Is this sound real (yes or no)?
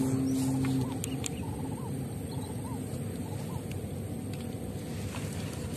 yes